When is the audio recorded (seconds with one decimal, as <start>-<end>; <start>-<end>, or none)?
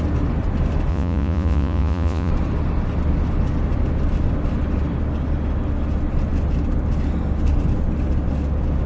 0.0-0.9; 2.3-8.9